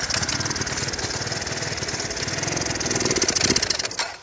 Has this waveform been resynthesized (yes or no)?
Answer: no